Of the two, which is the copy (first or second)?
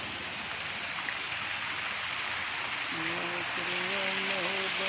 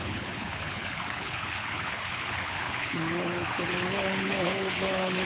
second